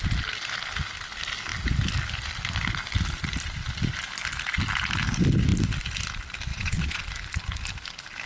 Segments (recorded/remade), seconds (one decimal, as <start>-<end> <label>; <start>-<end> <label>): 0.0-6.5 recorded; 6.5-7.0 remade; 7.0-8.3 recorded